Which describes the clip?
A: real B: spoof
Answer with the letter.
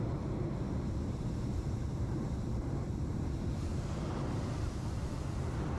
B